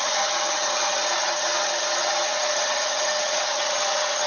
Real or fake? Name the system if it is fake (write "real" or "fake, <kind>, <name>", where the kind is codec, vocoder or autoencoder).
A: fake, vocoder, HiFi-GAN